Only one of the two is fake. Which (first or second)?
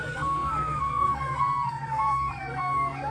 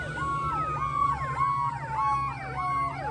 first